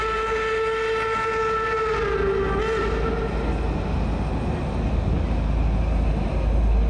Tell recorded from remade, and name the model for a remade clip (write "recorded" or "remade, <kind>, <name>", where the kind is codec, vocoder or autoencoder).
recorded